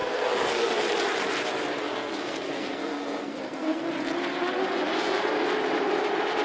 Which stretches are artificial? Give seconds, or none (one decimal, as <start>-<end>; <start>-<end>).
0.0-0.7; 1.8-3.9